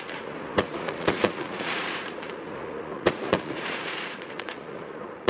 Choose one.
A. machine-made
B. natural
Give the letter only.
A